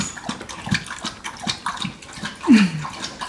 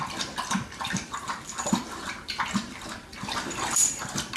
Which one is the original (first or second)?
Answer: first